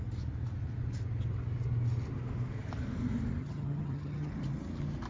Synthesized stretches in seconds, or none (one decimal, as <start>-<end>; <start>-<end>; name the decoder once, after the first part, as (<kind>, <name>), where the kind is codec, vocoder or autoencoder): 3.4-4.3 (vocoder, HiFi-GAN)